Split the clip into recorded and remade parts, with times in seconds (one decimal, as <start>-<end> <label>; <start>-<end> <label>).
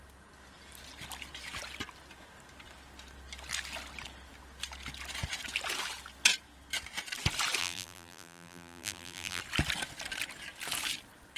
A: 0.0-7.6 recorded; 7.6-9.4 remade; 9.4-11.4 recorded